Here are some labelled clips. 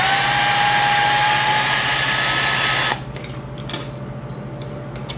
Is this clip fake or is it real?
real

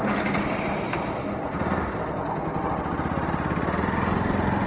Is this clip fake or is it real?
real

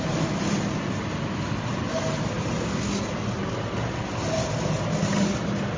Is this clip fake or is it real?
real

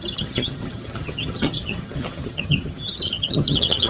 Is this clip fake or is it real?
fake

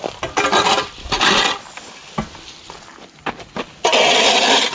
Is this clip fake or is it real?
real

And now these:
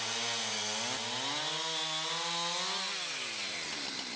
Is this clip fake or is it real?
real